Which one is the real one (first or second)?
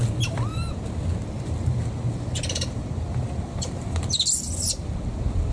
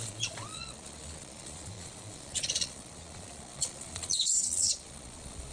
first